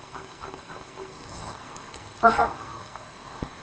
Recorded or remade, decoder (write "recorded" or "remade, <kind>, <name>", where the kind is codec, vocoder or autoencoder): remade, codec, SNAC